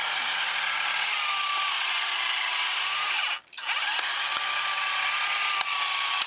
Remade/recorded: recorded